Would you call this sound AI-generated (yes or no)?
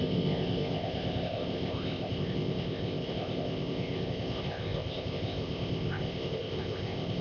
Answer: yes